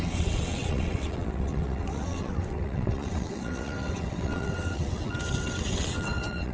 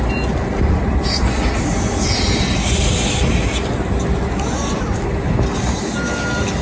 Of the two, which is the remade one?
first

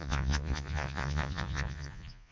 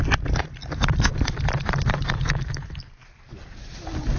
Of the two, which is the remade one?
first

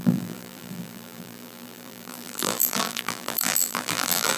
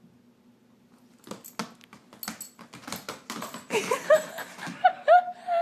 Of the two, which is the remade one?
first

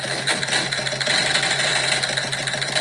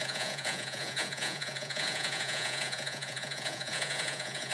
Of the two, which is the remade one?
second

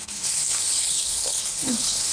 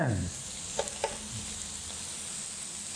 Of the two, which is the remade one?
first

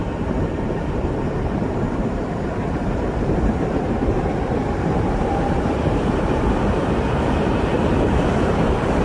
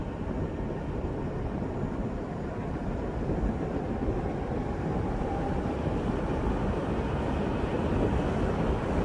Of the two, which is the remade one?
first